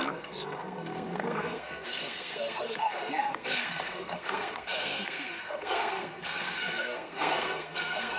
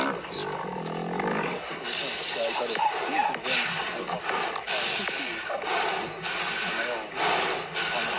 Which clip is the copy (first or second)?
first